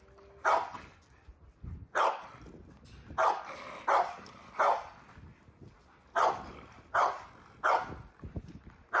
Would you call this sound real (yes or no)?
yes